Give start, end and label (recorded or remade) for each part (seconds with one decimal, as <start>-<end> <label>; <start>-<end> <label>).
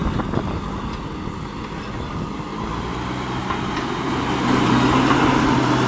0.0-5.9 recorded